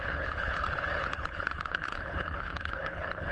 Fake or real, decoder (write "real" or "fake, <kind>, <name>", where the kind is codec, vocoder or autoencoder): fake, codec, HILCodec